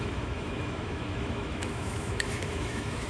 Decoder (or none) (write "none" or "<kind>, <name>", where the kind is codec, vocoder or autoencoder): autoencoder, DAC-VAE